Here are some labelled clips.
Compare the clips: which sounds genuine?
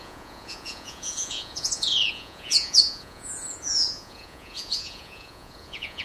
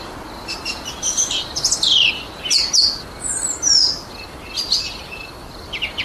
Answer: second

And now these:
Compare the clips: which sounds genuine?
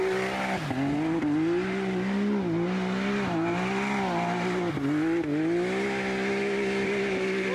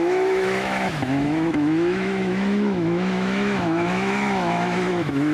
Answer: first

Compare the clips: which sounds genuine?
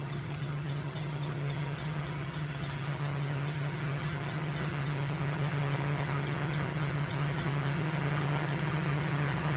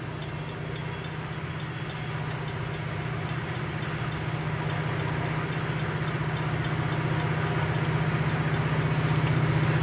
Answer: second